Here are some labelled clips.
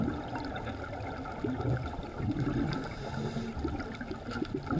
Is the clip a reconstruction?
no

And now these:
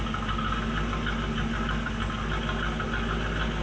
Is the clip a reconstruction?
no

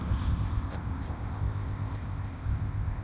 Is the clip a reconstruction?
yes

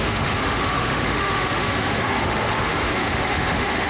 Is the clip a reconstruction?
yes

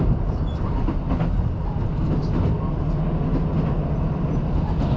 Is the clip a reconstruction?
no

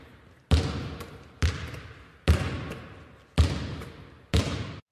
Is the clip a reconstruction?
no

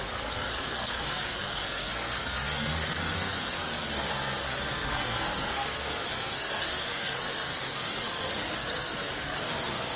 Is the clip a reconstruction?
yes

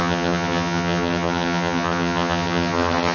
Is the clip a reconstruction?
yes